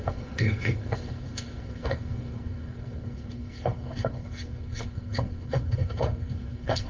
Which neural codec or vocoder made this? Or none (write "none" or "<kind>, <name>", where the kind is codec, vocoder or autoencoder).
codec, SNAC